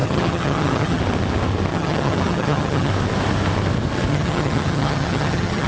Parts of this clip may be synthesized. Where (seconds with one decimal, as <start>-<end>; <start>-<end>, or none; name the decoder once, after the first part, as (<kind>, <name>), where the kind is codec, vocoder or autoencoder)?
0.0-1.0 (vocoder, HiFi-GAN); 1.7-2.9; 4.1-5.7